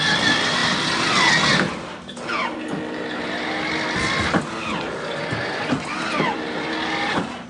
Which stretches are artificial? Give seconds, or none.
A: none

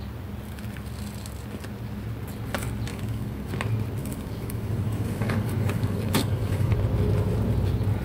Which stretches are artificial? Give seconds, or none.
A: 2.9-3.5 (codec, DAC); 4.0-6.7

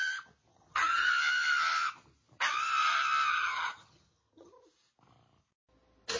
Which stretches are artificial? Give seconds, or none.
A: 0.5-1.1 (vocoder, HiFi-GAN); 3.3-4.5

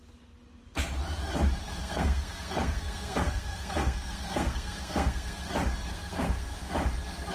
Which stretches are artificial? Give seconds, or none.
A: 1.8-5.5 (codec, SNAC); 5.9-6.7